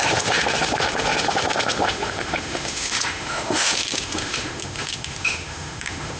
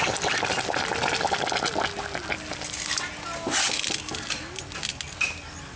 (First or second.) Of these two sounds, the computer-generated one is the first